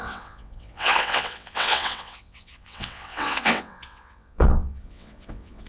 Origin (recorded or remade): remade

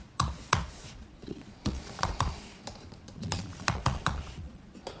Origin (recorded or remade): remade